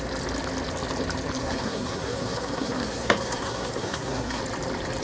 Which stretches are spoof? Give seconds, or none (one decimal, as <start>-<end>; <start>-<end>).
1.4-4.4